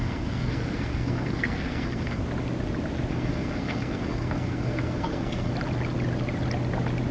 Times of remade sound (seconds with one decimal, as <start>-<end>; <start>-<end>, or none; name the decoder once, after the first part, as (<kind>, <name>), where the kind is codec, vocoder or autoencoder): 0.0-2.2 (codec, SNAC); 3.1-5.5